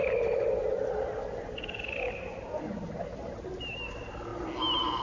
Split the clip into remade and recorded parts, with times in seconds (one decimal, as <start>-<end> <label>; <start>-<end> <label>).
0.0-5.0 recorded